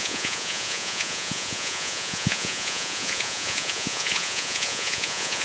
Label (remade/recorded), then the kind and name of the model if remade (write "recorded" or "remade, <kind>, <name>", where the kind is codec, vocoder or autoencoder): remade, vocoder, Vocos